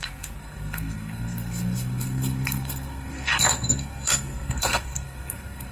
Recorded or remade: remade